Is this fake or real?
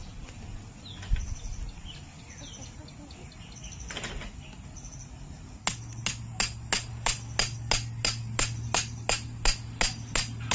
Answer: real